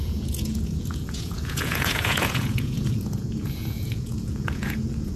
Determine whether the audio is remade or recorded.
remade